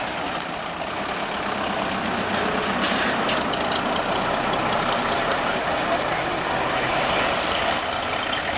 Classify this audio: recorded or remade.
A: recorded